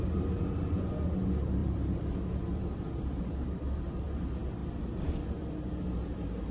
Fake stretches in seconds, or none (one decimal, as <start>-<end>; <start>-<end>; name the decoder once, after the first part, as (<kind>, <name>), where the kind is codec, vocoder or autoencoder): 1.6-3.2 (vocoder, BigVGAN v2); 4.6-5.2